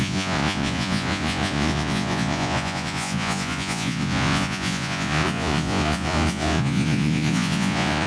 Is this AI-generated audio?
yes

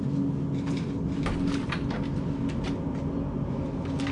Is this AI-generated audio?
no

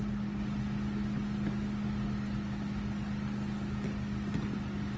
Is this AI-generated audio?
no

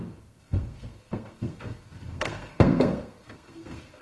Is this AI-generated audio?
yes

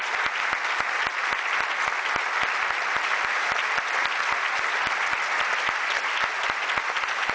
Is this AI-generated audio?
no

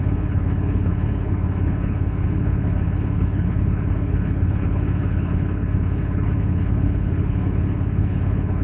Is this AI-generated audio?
yes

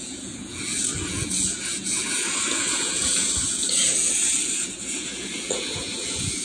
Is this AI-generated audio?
yes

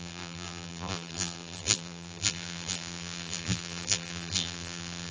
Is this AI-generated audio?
yes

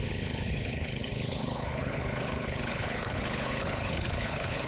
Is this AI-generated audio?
yes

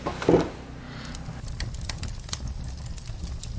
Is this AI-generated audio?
no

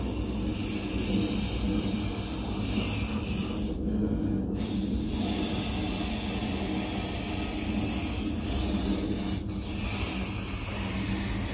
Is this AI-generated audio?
no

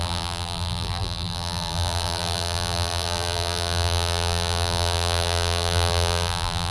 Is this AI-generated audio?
yes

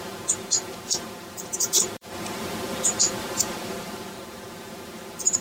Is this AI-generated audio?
yes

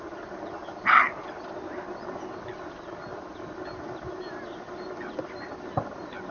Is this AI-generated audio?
no